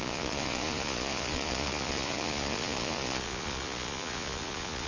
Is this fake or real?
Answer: fake